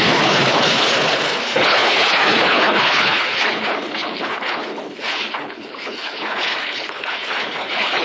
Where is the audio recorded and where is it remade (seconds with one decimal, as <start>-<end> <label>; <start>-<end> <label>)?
0.0-8.0 remade

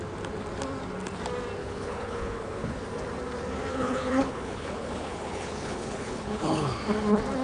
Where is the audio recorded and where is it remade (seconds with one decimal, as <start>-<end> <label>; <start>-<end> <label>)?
0.0-1.6 recorded; 1.6-2.8 remade; 2.8-3.7 recorded; 3.7-6.8 remade; 6.8-7.4 recorded

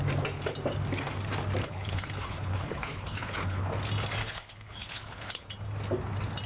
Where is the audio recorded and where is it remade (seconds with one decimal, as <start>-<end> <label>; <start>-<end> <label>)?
0.0-1.6 recorded; 1.6-3.6 remade; 3.6-4.2 recorded; 4.2-5.5 remade; 5.5-6.5 recorded

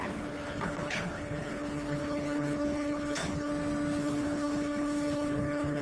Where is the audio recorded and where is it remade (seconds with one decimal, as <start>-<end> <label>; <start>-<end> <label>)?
0.0-3.5 remade; 3.5-4.0 recorded; 4.0-5.8 remade

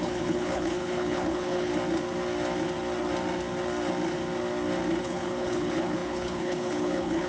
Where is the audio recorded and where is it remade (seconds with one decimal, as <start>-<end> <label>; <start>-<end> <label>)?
0.0-1.7 remade; 1.7-5.0 recorded; 5.0-7.3 remade

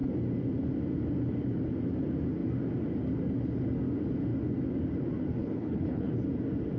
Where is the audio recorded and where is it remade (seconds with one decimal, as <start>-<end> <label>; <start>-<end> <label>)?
0.0-5.4 recorded; 5.4-6.1 remade; 6.1-6.8 recorded

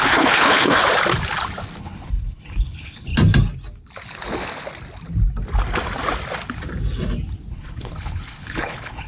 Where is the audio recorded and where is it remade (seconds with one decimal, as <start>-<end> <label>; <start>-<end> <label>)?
0.0-0.8 remade; 0.8-1.8 recorded; 1.8-3.1 remade; 3.1-7.5 recorded; 7.5-9.1 remade